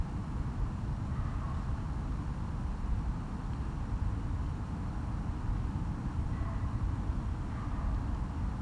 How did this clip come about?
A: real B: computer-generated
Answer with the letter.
A